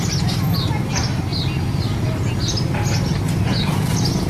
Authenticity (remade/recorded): recorded